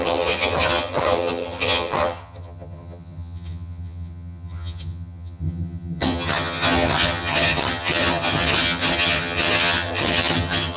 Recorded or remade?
remade